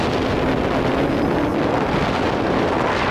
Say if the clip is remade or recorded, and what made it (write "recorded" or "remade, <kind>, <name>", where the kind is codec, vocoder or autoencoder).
recorded